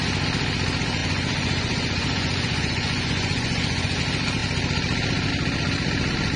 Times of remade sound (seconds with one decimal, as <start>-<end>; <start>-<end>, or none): 1.0-4.0

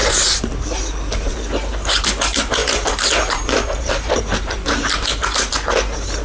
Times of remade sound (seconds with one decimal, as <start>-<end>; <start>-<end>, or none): 1.7-5.1; 5.8-6.2

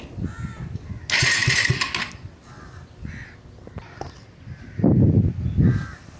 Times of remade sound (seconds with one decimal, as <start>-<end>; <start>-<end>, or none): none